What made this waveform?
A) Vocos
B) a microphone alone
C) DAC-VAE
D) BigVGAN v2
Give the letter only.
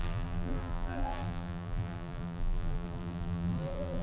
D